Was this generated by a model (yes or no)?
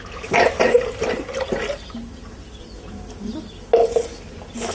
no